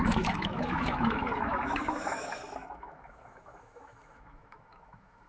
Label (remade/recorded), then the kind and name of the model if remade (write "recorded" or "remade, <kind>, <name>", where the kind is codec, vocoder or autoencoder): remade, autoencoder, DAC-VAE